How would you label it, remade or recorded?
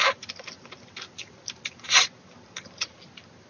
recorded